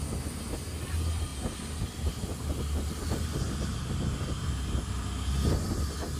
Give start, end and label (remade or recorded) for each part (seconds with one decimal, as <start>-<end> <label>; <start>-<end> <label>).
0.0-6.2 recorded